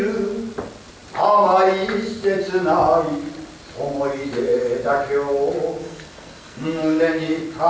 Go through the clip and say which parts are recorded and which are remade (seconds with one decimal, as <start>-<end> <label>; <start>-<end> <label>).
0.0-5.8 recorded; 5.8-7.0 remade; 7.0-7.7 recorded